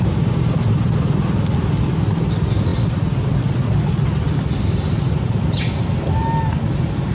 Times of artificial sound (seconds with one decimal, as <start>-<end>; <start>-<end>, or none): 2.7-5.9